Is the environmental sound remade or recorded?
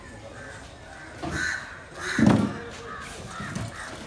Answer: recorded